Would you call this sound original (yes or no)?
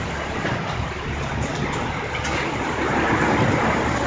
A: yes